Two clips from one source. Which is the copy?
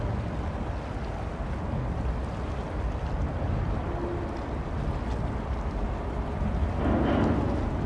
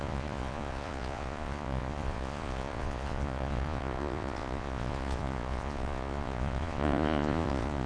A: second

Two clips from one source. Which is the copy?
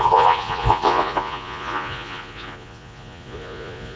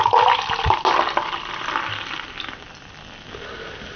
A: first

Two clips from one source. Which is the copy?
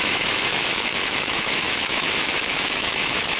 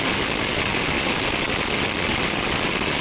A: first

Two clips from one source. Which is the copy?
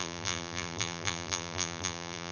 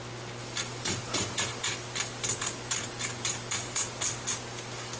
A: first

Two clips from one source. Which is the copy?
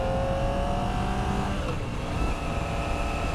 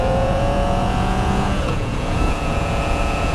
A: second